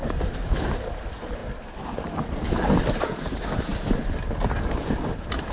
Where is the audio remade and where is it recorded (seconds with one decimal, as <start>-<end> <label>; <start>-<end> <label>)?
0.0-1.4 remade; 1.4-2.8 recorded; 2.8-3.7 remade; 3.7-4.9 recorded; 4.9-5.5 remade